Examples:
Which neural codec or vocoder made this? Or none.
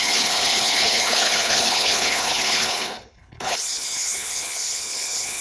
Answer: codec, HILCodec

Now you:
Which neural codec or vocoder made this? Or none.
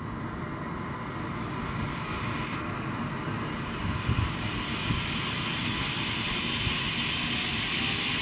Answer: none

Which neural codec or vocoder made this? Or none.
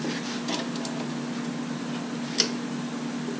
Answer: none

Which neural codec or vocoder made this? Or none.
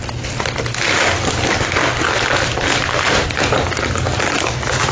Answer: none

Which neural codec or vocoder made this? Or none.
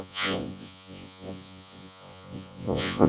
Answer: vocoder, Vocos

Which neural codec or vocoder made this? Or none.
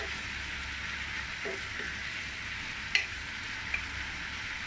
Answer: none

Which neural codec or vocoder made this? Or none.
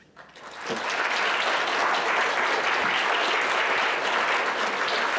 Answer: none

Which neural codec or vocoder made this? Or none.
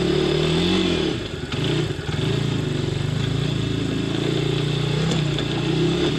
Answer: none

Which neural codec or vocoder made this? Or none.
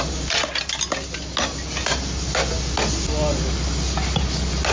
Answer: none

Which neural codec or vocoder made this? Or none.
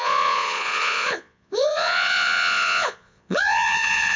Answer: vocoder, Vocos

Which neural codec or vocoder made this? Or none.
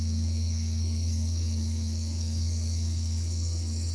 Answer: codec, SNAC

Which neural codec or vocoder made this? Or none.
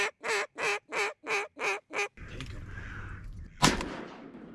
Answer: none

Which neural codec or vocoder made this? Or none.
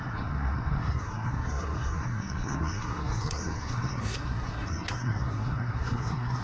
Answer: codec, SNAC